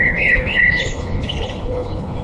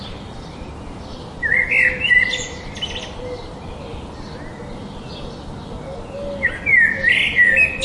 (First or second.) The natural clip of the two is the second